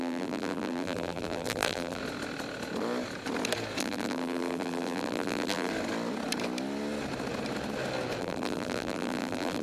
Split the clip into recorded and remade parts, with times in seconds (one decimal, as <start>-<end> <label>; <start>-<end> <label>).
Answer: 0.0-2.0 remade; 2.0-3.8 recorded; 3.8-5.7 remade; 5.7-8.2 recorded; 8.2-9.6 remade